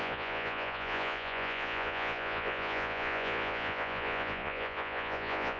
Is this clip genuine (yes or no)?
no